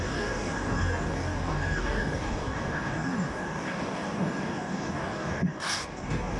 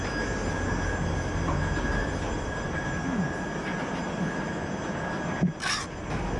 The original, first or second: second